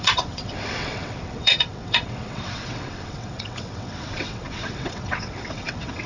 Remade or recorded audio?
remade